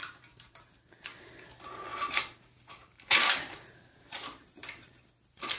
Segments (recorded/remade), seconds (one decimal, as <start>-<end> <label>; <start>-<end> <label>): 0.0-0.8 remade; 0.8-1.9 recorded; 1.9-5.0 remade; 5.0-5.6 recorded